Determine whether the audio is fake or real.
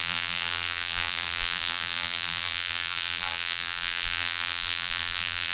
fake